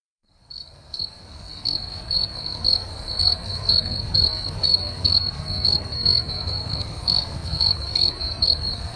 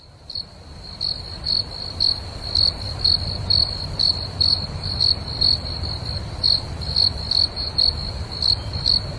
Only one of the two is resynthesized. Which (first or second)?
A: first